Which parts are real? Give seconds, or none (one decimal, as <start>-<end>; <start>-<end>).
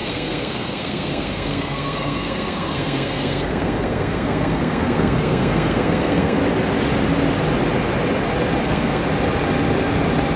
6.4-8.6; 9.0-10.4